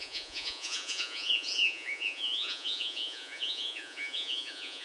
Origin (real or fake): fake